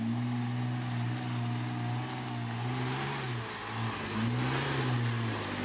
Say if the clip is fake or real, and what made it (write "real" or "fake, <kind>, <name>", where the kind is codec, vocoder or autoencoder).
real